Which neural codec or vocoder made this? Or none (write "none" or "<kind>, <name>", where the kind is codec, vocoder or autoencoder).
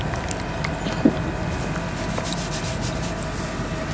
none